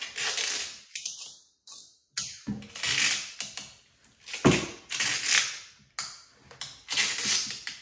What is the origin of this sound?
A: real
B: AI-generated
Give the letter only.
A